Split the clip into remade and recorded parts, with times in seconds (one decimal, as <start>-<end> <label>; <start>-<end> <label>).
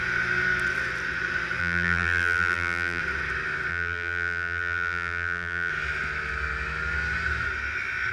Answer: 0.0-1.6 recorded; 1.6-3.0 remade; 3.0-3.7 recorded; 3.7-5.7 remade; 5.7-8.1 recorded